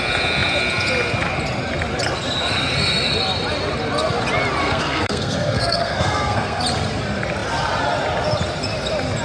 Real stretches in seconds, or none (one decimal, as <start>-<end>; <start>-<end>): 0.0-4.6; 6.6-9.2